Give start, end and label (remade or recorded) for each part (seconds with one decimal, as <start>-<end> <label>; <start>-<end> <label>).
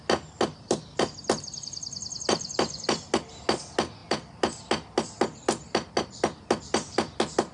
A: 0.0-7.5 recorded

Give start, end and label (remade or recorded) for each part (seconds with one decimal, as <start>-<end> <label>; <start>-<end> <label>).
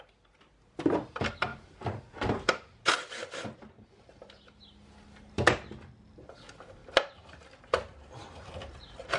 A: 0.0-1.5 recorded; 1.5-3.1 remade; 3.1-6.8 recorded; 6.8-7.4 remade; 7.4-9.2 recorded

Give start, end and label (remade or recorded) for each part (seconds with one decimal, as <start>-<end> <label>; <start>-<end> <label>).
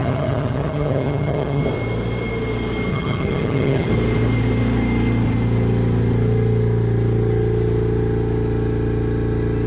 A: 0.0-1.6 remade; 1.6-2.9 recorded; 2.9-3.9 remade; 3.9-9.7 recorded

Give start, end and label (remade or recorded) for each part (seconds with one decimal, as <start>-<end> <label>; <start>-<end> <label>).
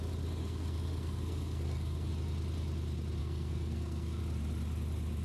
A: 0.0-0.4 recorded; 0.4-2.1 remade; 2.1-3.2 recorded; 3.2-4.2 remade; 4.2-5.2 recorded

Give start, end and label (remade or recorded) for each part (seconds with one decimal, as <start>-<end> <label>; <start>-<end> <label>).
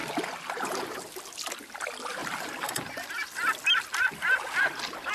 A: 0.0-2.2 recorded; 2.2-5.1 remade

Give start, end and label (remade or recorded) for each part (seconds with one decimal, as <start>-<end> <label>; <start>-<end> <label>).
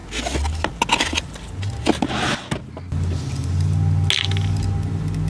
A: 0.0-5.3 recorded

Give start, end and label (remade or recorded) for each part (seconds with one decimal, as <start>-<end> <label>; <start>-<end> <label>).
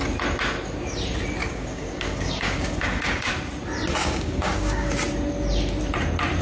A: 0.0-1.4 recorded; 1.4-3.3 remade; 3.3-4.0 recorded; 4.0-4.9 remade; 4.9-6.4 recorded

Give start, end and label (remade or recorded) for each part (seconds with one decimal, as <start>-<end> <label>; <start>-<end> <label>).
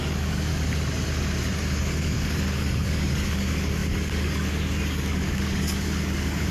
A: 0.0-0.5 remade; 0.5-1.8 recorded; 1.8-6.5 remade